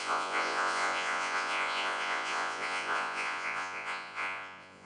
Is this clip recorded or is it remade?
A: remade